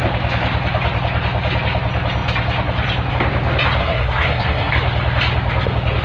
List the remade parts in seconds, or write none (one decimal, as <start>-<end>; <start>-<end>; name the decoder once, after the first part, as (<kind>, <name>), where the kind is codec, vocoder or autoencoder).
3.8-4.7 (codec, SNAC)